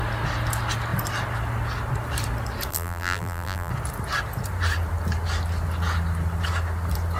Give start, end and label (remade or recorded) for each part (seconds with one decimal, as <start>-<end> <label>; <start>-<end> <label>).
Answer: 0.0-2.7 recorded; 2.7-3.7 remade; 3.7-7.2 recorded